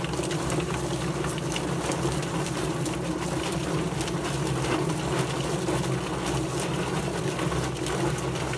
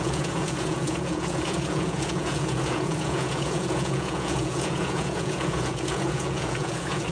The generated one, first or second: second